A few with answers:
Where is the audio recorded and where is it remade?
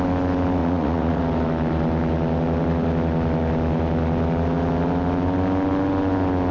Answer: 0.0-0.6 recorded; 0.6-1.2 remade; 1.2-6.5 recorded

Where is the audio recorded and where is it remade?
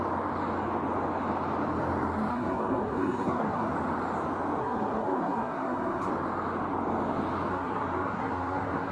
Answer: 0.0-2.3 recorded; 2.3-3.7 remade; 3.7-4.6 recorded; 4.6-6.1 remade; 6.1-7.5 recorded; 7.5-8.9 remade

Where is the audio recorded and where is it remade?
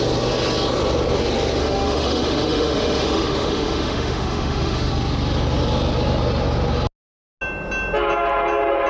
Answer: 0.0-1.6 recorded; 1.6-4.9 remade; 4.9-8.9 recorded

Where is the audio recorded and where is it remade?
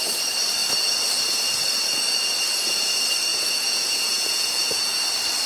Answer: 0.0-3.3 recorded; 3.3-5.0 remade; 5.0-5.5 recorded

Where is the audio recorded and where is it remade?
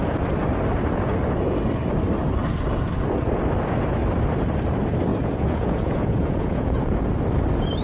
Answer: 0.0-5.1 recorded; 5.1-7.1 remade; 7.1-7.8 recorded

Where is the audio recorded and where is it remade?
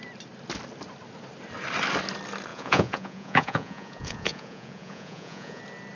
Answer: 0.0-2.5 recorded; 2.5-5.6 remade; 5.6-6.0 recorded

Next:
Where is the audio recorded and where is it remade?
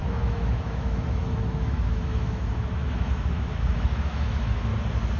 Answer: 0.0-4.7 remade; 4.7-5.2 recorded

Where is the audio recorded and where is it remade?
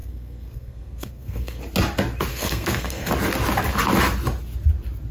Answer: 0.0-1.6 remade; 1.6-2.3 recorded; 2.3-3.1 remade; 3.1-5.1 recorded